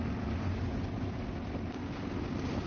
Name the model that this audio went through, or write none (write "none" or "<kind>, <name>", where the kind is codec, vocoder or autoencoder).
none